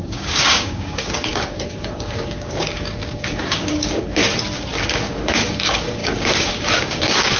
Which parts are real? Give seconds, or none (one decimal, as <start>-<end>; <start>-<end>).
4.2-4.8